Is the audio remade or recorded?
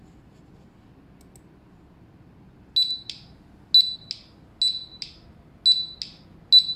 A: recorded